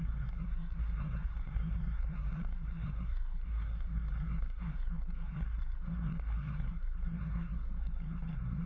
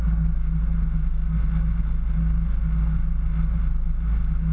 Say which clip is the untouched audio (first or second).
second